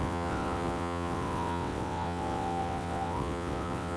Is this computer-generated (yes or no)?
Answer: yes